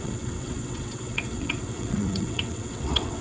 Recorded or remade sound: remade